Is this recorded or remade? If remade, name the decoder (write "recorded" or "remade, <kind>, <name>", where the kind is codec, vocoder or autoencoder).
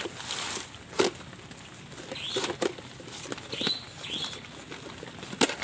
recorded